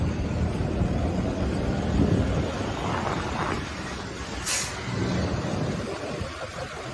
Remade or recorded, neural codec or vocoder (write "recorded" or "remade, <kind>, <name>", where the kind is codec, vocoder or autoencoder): recorded